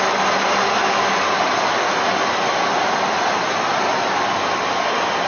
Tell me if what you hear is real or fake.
real